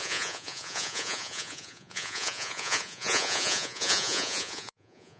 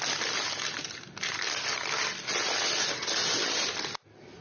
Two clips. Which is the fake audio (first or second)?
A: first